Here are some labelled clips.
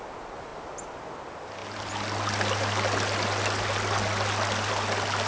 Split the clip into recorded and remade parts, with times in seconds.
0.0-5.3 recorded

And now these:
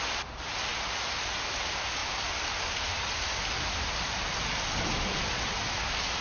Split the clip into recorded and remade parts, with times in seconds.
0.0-6.2 recorded

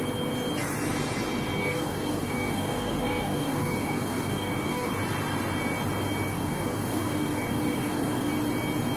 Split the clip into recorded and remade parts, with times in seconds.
0.0-1.6 recorded; 1.6-4.9 remade; 4.9-6.3 recorded; 6.3-8.3 remade; 8.3-9.0 recorded

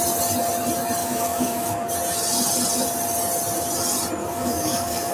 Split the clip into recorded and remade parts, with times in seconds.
0.0-1.0 recorded; 1.0-1.9 remade; 1.9-4.2 recorded; 4.2-5.1 remade

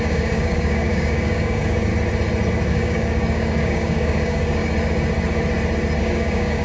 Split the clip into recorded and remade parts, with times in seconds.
0.0-1.9 remade; 1.9-2.7 recorded; 2.7-4.6 remade; 4.6-6.0 recorded; 6.0-6.6 remade

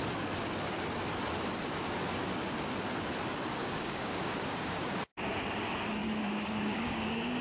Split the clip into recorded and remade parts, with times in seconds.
0.0-3.6 recorded; 3.6-5.0 remade; 5.0-6.0 recorded; 6.0-7.4 remade

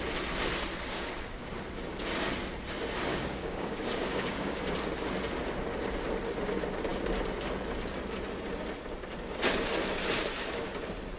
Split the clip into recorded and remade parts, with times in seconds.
0.0-0.7 recorded; 0.7-1.4 remade; 1.4-3.1 recorded; 3.1-4.6 remade; 4.6-11.2 recorded